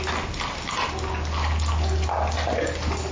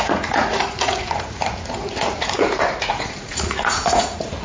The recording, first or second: first